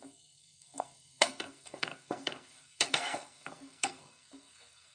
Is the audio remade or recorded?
remade